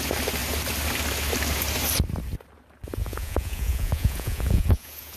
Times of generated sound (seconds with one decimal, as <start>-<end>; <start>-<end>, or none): 3.0-5.2